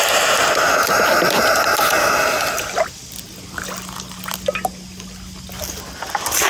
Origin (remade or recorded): recorded